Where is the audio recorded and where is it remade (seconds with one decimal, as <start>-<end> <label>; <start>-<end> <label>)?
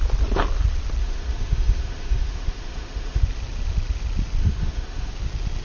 0.0-1.0 recorded; 1.0-3.2 remade; 3.2-4.4 recorded; 4.4-5.1 remade; 5.1-5.6 recorded